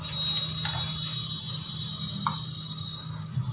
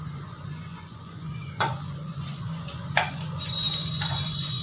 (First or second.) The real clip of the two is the first